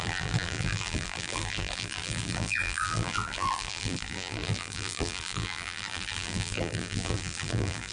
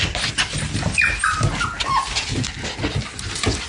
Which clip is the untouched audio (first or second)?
second